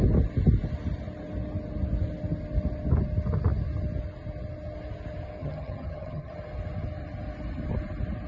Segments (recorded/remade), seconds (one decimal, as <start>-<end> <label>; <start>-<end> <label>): 0.0-5.4 recorded; 5.4-6.3 remade; 6.3-8.3 recorded